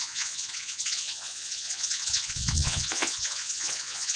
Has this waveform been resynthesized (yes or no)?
yes